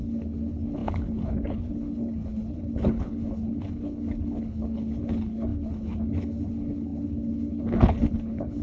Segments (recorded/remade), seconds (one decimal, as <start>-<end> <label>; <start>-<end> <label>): 0.0-8.6 remade